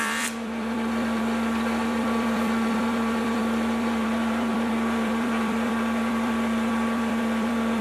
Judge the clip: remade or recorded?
remade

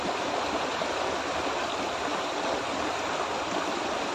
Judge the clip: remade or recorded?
remade